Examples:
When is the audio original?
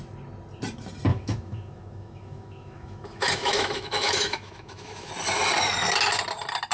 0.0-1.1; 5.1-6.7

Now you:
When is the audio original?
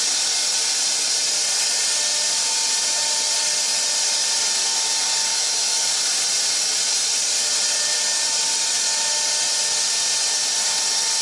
0.0-5.3; 5.9-11.2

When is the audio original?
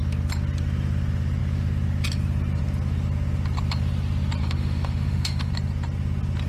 0.0-4.4; 5.5-6.5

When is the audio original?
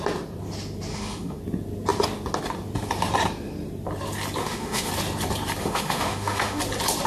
0.0-0.9; 1.4-4.4; 4.9-5.6; 6.6-7.1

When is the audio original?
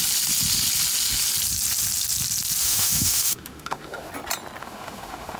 0.0-2.6; 4.1-4.6